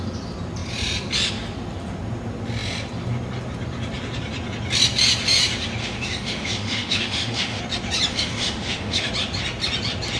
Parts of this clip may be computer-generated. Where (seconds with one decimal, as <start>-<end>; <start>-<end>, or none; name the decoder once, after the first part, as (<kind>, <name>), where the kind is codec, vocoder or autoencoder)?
5.8-7.6 (autoencoder, DAC-VAE); 8.1-9.1